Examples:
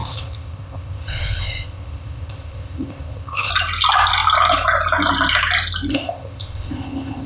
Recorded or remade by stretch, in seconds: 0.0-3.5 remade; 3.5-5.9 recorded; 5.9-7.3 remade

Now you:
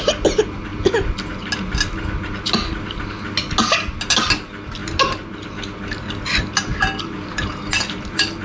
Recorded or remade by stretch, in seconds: 0.0-8.4 recorded

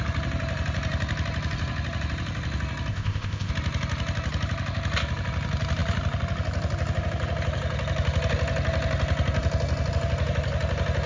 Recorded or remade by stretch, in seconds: 0.0-2.9 recorded; 2.9-3.5 remade; 3.5-11.1 recorded

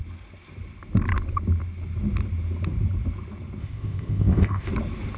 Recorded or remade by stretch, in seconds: 0.0-3.6 recorded; 3.6-4.7 remade; 4.7-5.2 recorded

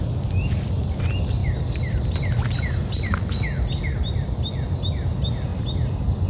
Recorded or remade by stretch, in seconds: 0.0-6.3 recorded

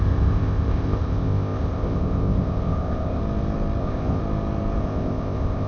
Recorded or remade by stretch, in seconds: 0.0-3.2 remade; 3.2-3.8 recorded; 3.8-4.2 remade; 4.2-4.8 recorded; 4.8-5.7 remade

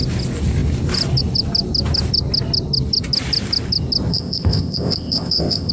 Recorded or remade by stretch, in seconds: 0.0-4.1 recorded; 4.1-5.7 remade